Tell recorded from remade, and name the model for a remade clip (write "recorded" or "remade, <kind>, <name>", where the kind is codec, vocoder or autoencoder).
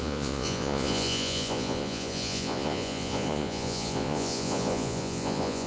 remade, vocoder, Vocos